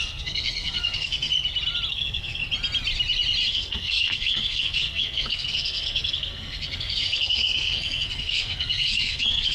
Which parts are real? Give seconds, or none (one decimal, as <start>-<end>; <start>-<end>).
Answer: 1.3-1.9; 2.4-3.5